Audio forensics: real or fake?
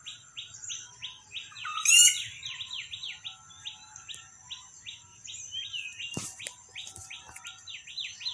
real